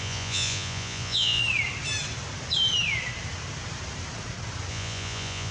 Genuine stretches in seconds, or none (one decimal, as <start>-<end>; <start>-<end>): 1.4-4.7